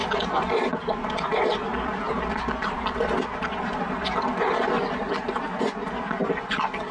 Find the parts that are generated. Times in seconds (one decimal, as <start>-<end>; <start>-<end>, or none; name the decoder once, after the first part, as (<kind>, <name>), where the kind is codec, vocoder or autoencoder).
none